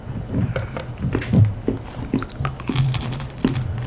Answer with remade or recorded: remade